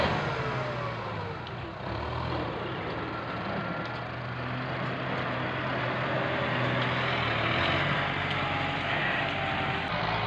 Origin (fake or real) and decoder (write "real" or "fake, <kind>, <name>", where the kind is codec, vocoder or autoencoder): real